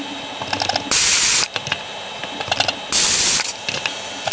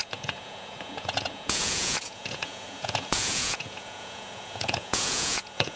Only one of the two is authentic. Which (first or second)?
first